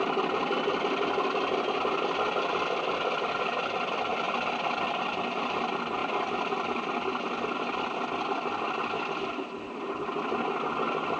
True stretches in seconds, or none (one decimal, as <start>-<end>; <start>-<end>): 0.0-11.2